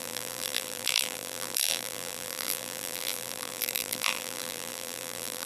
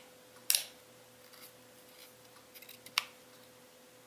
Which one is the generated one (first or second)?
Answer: first